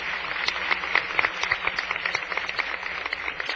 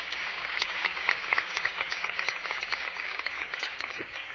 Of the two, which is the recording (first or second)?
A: first